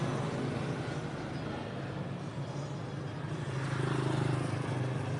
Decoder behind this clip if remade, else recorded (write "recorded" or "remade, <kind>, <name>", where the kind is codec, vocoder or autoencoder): recorded